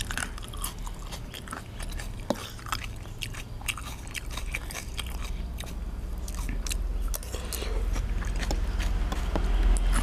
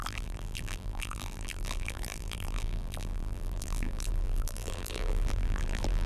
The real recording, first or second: first